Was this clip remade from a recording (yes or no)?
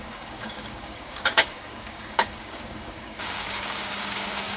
yes